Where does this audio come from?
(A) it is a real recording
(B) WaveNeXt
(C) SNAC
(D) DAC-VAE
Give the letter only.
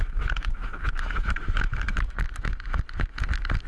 D